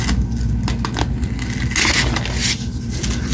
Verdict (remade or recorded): recorded